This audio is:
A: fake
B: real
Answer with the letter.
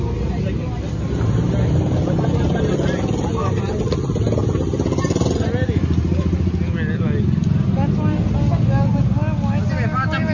B